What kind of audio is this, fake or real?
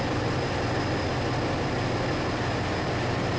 real